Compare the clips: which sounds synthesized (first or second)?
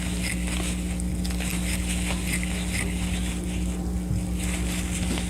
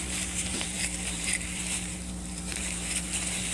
second